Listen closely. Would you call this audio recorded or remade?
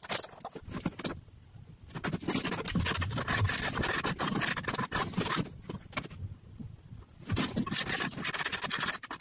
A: recorded